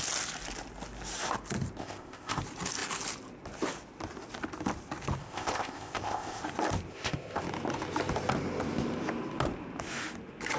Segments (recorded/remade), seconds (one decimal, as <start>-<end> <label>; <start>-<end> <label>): 0.0-1.8 recorded; 1.8-2.4 remade; 2.4-5.2 recorded; 5.2-6.4 remade; 6.4-6.9 recorded; 6.9-7.4 remade; 7.4-10.6 recorded